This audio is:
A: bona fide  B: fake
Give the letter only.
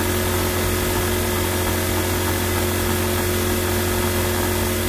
A